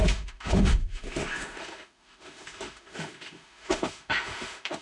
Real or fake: fake